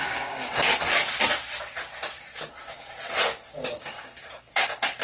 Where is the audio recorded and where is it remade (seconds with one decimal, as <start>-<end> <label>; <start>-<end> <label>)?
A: 0.0-0.7 remade; 0.7-3.7 recorded; 3.7-5.0 remade

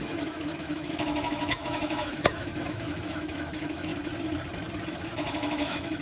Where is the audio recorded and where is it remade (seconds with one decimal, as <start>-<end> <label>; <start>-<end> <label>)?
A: 0.0-3.9 remade; 3.9-4.9 recorded; 4.9-6.0 remade

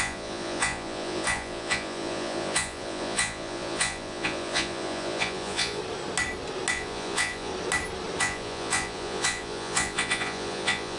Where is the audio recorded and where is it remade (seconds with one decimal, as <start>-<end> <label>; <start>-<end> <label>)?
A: 0.0-5.8 remade; 5.8-6.7 recorded; 6.7-7.5 remade; 7.5-8.2 recorded; 8.2-11.0 remade

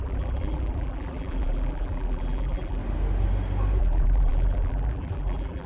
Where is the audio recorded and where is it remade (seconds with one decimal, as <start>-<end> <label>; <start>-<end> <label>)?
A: 0.0-2.8 remade; 2.8-3.8 recorded; 3.8-5.7 remade

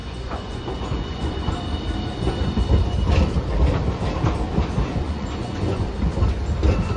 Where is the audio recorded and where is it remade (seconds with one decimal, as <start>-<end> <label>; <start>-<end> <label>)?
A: 0.0-1.5 remade; 1.5-4.9 recorded; 4.9-5.9 remade; 5.9-7.0 recorded

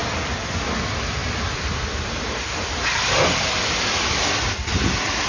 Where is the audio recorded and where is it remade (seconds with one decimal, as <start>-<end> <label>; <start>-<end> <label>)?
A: 0.0-1.2 recorded; 1.2-4.4 remade; 4.4-5.3 recorded